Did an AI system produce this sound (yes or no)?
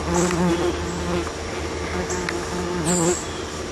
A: no